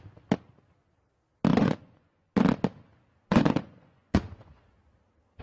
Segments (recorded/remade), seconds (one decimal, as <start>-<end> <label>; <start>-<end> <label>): 0.0-1.5 recorded; 1.5-2.3 remade; 2.3-3.3 recorded; 3.3-4.7 remade; 4.7-5.4 recorded